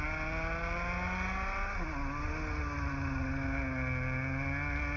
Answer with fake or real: real